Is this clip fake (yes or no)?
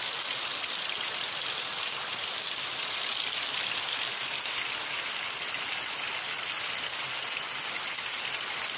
no